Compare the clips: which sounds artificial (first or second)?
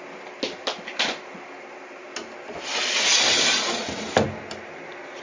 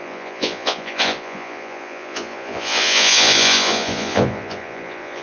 second